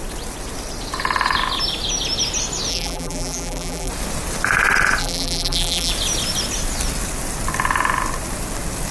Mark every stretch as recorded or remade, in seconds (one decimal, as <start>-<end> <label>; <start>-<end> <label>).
0.0-2.7 recorded; 2.7-3.9 remade; 3.9-5.0 recorded; 5.0-5.9 remade; 5.9-8.9 recorded